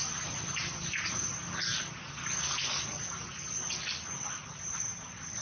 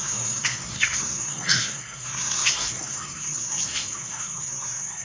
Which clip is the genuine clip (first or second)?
first